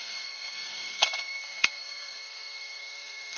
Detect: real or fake fake